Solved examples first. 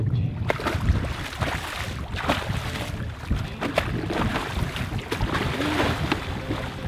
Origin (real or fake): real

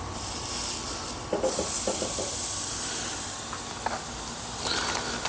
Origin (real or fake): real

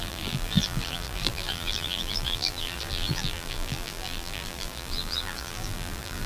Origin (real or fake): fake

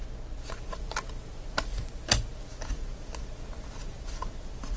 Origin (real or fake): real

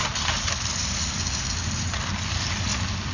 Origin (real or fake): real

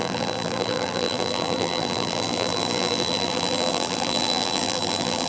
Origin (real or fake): fake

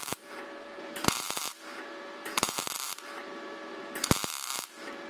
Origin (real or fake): fake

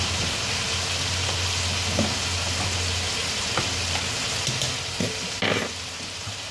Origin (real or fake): real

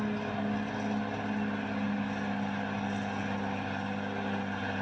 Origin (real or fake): real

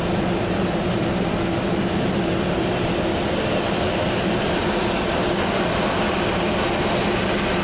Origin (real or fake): real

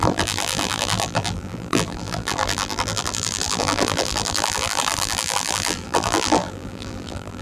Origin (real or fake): fake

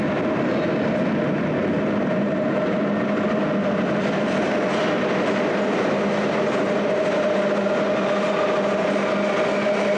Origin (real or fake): real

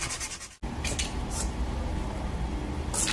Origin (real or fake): real